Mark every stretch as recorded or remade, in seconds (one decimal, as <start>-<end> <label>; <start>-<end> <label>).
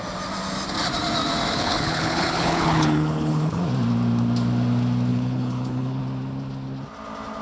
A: 0.0-1.5 recorded; 1.5-3.6 remade; 3.6-5.1 recorded; 5.1-6.0 remade; 6.0-7.4 recorded